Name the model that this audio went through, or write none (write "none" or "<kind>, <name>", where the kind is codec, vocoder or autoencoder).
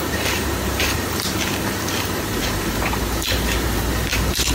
vocoder, BigVGAN v2